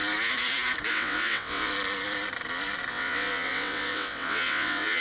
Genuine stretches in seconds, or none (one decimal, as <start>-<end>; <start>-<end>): 0.0-0.9; 1.7-2.9